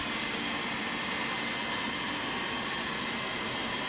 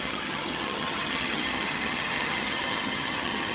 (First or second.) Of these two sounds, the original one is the first